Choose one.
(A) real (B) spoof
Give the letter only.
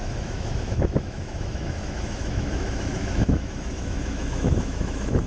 B